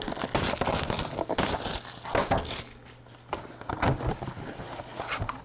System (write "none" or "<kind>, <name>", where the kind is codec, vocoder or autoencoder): none